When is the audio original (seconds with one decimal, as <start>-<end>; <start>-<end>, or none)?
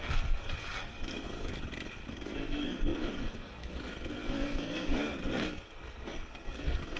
1.5-2.1